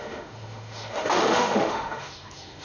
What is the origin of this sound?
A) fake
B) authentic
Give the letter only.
A